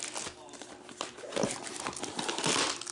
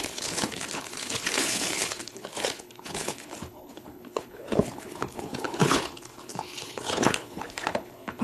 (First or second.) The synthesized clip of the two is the second